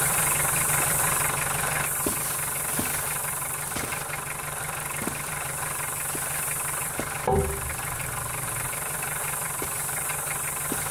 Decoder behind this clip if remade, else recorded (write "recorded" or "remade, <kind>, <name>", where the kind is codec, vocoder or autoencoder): remade, vocoder, BigVGAN v2